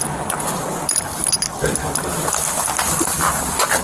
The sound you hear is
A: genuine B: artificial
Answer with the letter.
A